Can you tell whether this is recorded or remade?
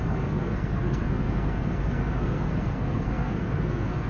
remade